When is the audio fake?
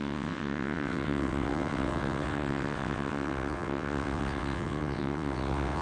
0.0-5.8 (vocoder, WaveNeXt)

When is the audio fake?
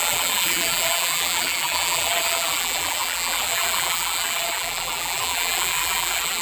0.0-6.4 (vocoder, BigVGAN v2)